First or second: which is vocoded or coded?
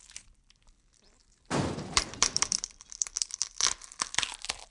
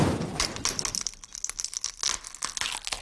first